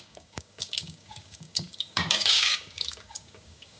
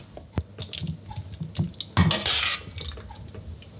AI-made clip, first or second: first